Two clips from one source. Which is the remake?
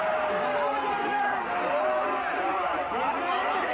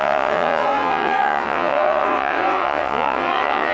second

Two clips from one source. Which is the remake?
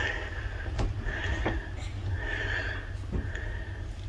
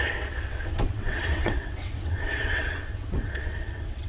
second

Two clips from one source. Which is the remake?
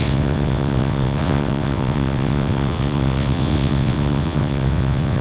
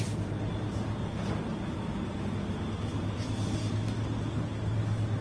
first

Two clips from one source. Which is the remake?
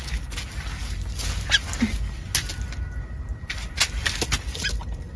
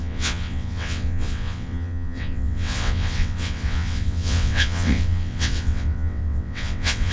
second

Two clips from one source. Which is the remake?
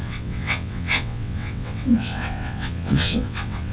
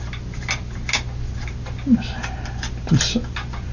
first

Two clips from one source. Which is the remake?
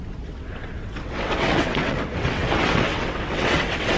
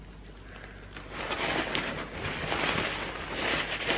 first